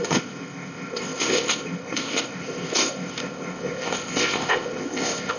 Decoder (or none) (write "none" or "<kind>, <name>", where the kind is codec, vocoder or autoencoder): codec, ZipCodec